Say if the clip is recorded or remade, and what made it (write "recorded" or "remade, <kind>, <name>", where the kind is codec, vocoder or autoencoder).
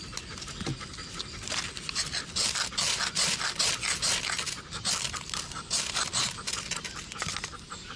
recorded